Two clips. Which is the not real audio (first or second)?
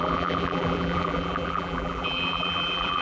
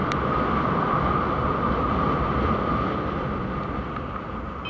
first